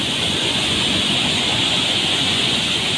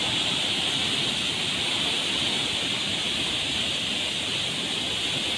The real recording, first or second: second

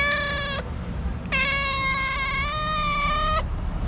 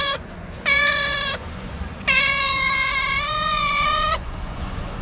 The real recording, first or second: first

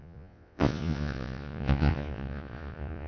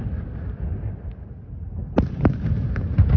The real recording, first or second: second